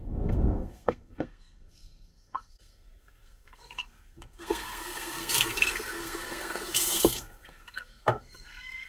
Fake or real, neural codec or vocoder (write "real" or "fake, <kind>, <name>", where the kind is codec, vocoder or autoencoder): fake, codec, SNAC